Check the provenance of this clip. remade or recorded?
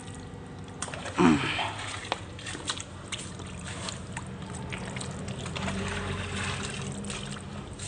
recorded